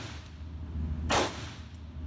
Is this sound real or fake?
real